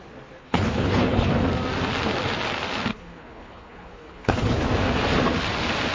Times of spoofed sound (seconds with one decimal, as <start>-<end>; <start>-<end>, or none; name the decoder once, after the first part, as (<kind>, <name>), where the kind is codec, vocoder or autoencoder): 0.4-1.3 (codec, HILCodec); 2.9-4.6